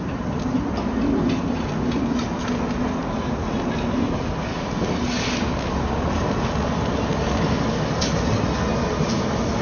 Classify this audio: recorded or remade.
recorded